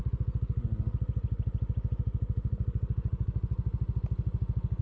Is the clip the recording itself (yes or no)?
yes